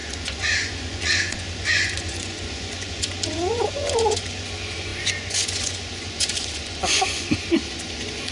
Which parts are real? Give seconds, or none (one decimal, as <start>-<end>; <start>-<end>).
none